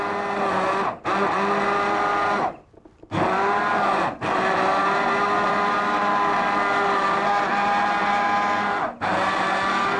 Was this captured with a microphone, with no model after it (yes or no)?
yes